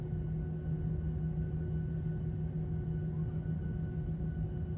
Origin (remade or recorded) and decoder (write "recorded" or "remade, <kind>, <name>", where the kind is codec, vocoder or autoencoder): recorded